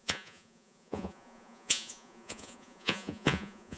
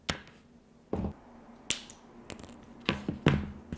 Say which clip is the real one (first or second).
second